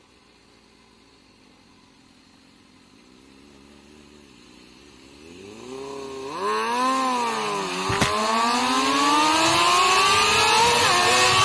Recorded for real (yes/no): yes